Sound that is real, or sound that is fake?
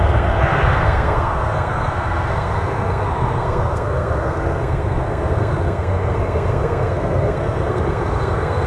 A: fake